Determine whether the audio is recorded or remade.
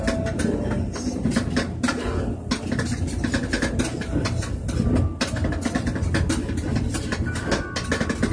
recorded